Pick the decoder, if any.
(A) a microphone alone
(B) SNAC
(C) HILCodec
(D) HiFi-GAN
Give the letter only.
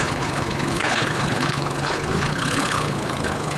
C